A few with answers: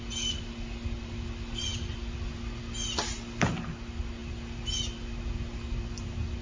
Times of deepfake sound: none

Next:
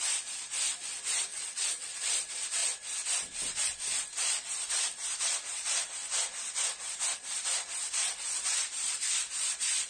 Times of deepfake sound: 1.3-1.9 (vocoder, WaveNeXt)

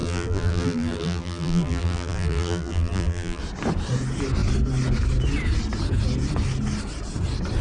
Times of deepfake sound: 0.0-3.4 (vocoder, BigVGAN v2)

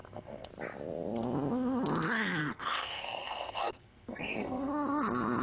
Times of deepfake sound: 0.0-0.5 (codec, SNAC); 2.4-4.7

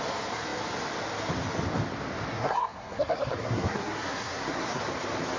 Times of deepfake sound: 2.3-4.8 (codec, SNAC)